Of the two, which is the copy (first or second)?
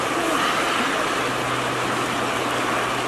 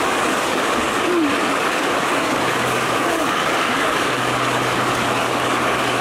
second